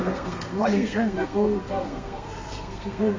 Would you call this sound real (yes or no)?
no